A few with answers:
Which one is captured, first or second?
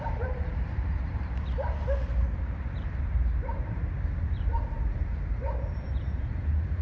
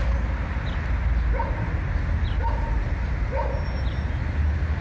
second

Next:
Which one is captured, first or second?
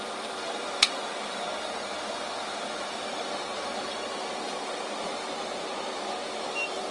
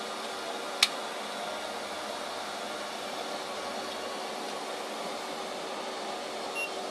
second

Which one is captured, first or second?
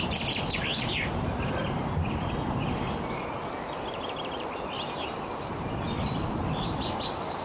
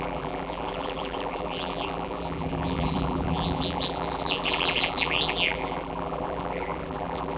first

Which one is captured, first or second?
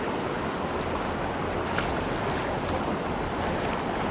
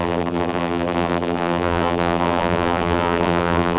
first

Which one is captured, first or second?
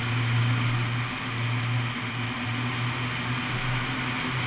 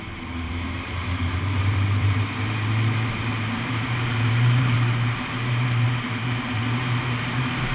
first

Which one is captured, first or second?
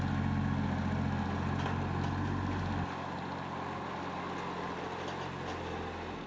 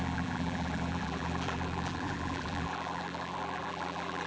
first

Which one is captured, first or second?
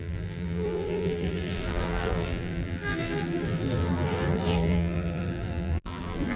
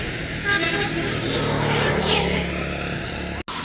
second